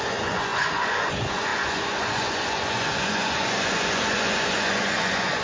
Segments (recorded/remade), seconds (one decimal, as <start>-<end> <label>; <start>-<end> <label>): 0.0-5.4 remade